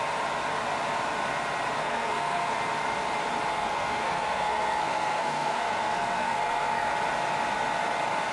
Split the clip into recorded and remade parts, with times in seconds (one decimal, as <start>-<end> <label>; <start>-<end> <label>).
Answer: 0.0-1.8 recorded; 1.8-2.5 remade; 2.5-3.5 recorded; 3.5-6.9 remade; 6.9-8.3 recorded